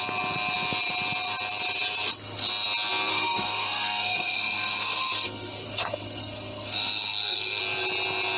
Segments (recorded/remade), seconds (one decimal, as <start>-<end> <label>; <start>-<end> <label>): 0.0-3.1 recorded; 3.1-7.6 remade; 7.6-8.4 recorded